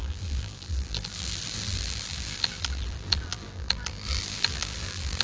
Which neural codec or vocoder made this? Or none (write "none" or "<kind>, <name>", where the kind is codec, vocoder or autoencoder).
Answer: vocoder, BigVGAN v2